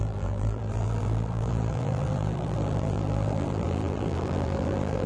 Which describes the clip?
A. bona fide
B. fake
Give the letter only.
B